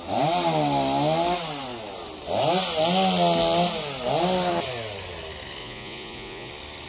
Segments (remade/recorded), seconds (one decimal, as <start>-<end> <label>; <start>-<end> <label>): 0.0-5.6 recorded; 5.6-6.5 remade; 6.5-6.9 recorded